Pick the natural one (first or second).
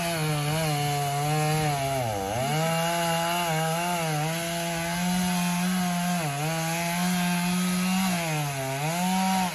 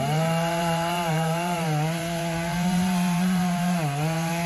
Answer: first